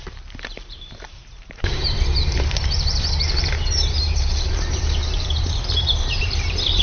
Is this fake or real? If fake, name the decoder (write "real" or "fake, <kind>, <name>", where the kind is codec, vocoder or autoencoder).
fake, vocoder, BigVGAN v2